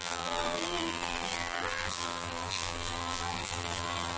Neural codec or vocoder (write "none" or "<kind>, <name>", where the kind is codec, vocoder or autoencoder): vocoder, BigVGAN v2